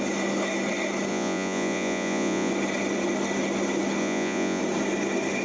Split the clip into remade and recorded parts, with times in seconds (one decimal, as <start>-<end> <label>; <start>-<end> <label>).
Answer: 0.0-1.1 recorded; 1.1-2.5 remade; 2.5-4.0 recorded; 4.0-4.6 remade; 4.6-5.4 recorded